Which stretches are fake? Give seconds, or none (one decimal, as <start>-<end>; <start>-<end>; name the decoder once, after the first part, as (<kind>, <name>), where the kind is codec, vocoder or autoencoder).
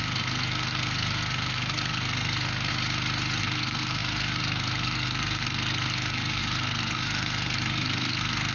0.0-2.7 (codec, SNAC); 3.4-8.5